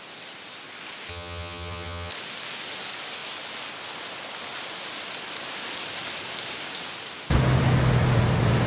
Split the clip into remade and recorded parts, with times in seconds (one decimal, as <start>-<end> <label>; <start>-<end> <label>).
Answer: 0.0-1.1 recorded; 1.1-2.1 remade; 2.1-8.7 recorded